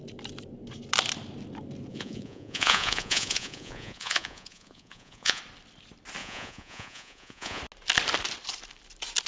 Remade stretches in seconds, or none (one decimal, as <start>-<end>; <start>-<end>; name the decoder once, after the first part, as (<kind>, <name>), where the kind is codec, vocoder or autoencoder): 1.9-5.4 (vocoder, Vocos); 6.2-7.6